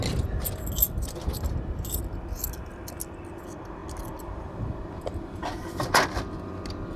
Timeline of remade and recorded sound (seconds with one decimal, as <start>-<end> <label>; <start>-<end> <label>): 0.0-7.0 recorded